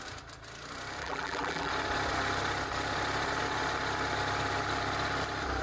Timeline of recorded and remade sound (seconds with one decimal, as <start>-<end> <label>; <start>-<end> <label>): 0.0-1.0 recorded; 1.0-1.7 remade; 1.7-5.6 recorded